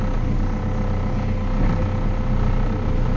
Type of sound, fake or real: real